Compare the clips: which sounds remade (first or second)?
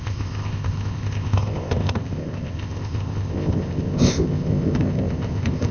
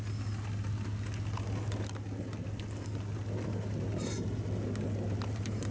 first